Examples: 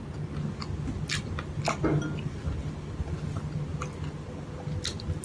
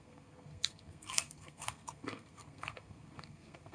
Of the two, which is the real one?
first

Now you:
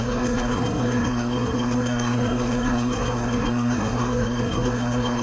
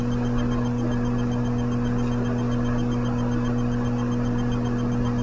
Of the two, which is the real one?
second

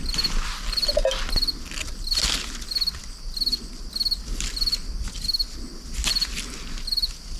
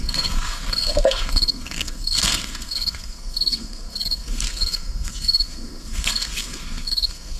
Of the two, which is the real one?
first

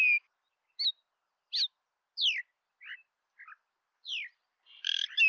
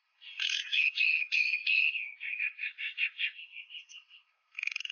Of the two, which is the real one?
first